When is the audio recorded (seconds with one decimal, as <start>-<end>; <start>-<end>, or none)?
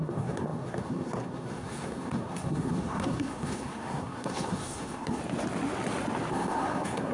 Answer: 5.2-6.3